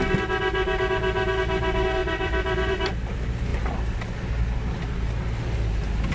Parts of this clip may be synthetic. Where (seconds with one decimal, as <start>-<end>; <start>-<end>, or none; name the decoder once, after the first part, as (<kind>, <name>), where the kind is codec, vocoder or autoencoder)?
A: 2.0-3.1 (vocoder, BigVGAN v2); 3.5-4.3